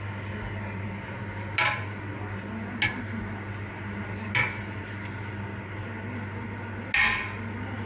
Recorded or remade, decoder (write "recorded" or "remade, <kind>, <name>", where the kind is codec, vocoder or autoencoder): recorded